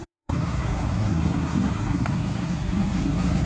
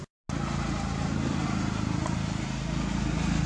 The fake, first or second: first